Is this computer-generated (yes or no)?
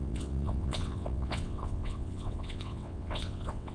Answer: yes